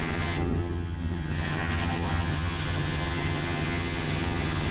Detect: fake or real fake